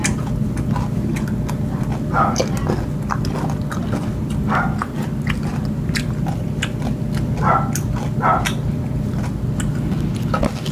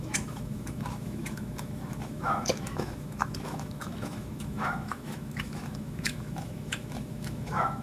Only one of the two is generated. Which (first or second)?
second